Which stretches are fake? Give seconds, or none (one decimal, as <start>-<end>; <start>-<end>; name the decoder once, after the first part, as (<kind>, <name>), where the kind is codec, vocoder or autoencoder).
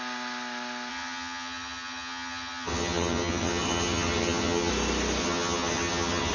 0.9-4.7 (vocoder, HiFi-GAN); 5.2-6.3